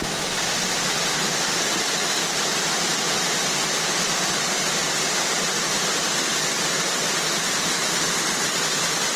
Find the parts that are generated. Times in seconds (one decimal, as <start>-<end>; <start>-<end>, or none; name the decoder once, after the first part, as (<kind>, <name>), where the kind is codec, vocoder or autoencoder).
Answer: none